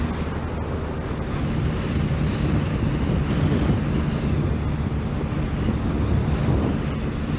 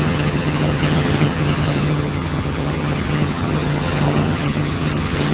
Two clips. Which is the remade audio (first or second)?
second